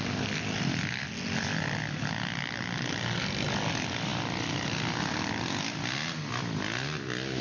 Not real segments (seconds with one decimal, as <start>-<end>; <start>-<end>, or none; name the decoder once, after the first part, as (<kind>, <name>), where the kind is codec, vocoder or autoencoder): none